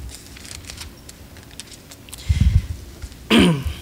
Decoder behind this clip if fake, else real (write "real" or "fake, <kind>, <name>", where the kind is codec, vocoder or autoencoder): real